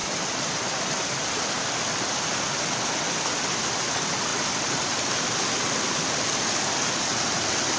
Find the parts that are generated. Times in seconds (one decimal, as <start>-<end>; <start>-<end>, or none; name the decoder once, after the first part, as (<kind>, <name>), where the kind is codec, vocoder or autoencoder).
none